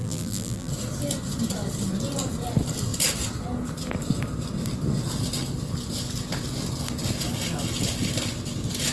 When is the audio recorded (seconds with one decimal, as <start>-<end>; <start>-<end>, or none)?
0.7-8.9